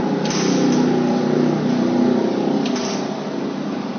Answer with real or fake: real